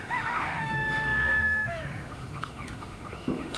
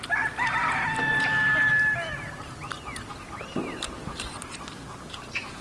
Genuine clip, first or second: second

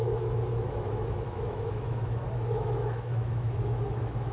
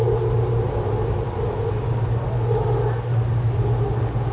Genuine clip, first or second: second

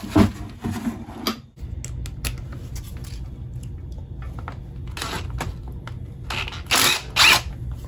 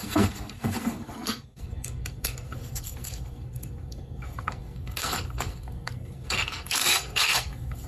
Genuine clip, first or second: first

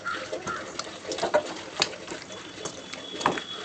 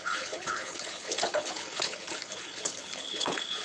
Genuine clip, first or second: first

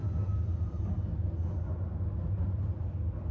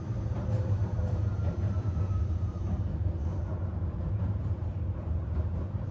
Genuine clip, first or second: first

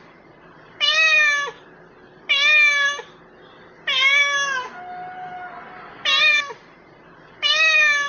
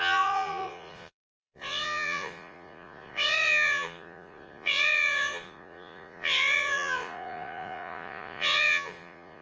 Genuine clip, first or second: first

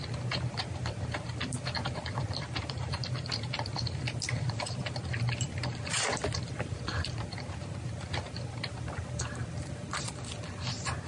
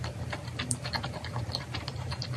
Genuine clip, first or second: second